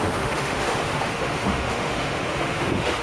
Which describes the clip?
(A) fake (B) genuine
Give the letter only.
A